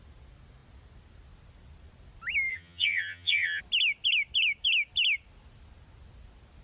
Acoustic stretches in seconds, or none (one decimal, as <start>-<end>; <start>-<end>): 0.0-2.5; 3.6-6.6

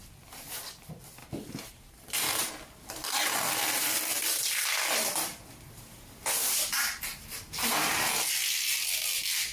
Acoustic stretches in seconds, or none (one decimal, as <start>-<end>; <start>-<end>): 0.0-1.2; 2.5-7.1; 7.9-9.5

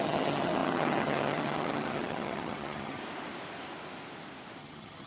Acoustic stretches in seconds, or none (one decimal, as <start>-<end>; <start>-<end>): 3.0-4.6